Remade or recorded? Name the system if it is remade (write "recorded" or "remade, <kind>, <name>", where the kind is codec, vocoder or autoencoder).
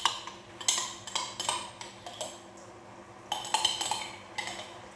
recorded